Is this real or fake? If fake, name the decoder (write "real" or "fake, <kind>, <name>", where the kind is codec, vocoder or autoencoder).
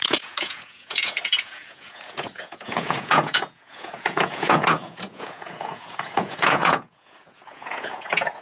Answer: fake, vocoder, Vocos